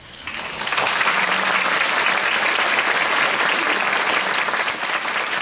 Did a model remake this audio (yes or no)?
no